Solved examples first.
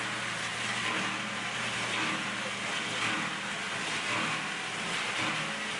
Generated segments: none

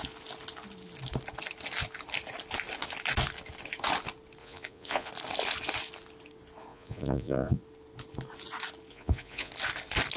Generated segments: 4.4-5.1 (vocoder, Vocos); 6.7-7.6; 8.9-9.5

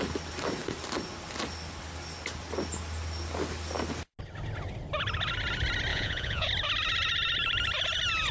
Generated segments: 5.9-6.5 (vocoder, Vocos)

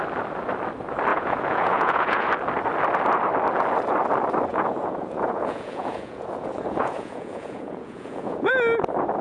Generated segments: 1.1-2.3 (vocoder, Vocos); 4.5-8.5

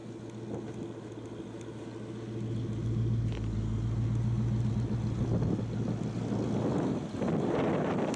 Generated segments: none

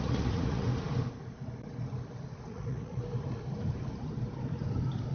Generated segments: 0.0-0.7 (vocoder, Vocos); 2.5-3.0